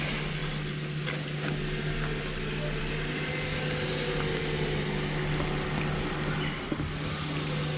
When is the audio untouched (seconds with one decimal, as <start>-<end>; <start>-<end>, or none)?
0.0-7.8